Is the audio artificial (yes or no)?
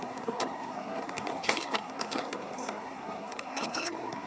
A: yes